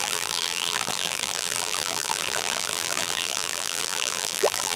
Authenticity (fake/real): fake